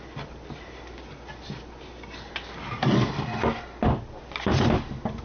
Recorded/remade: recorded